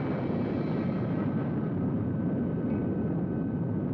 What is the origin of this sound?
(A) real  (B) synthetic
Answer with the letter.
B